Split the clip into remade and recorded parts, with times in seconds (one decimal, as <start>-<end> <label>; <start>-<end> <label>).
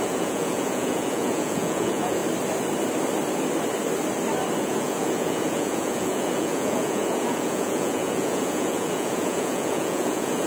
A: 0.0-2.2 remade; 2.2-4.6 recorded; 4.6-10.5 remade